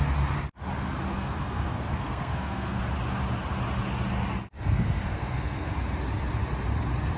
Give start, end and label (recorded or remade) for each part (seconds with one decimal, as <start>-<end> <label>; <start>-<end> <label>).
0.0-1.1 recorded; 1.1-2.8 remade; 2.8-4.8 recorded; 4.8-5.7 remade; 5.7-7.2 recorded